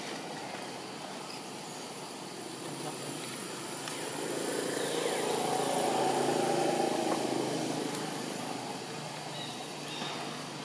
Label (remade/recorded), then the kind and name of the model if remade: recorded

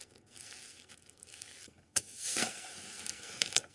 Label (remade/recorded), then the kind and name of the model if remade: remade, codec, SNAC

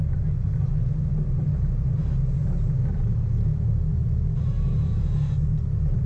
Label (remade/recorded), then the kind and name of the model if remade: recorded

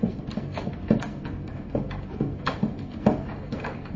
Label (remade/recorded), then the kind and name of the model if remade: remade, codec, SNAC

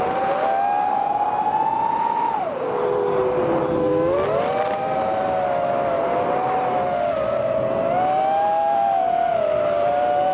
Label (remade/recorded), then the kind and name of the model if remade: recorded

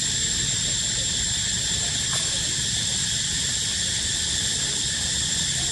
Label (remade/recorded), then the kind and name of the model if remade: recorded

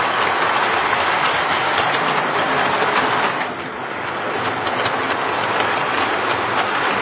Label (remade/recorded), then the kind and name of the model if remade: recorded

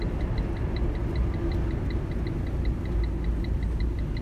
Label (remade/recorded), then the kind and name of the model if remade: recorded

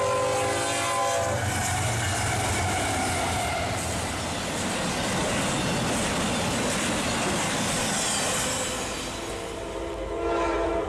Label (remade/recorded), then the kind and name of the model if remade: recorded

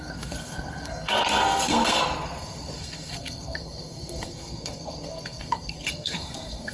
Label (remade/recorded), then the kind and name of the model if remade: remade, codec, SNAC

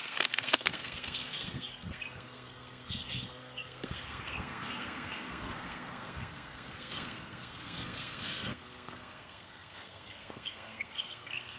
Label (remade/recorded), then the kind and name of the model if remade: remade, codec, SNAC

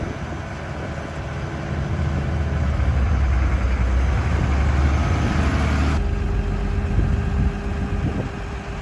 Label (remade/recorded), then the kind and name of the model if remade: recorded